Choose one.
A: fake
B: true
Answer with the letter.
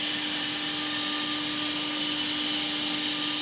B